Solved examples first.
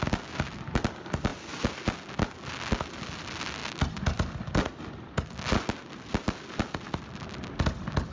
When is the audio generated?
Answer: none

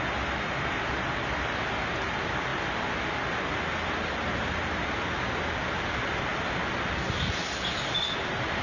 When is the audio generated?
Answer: none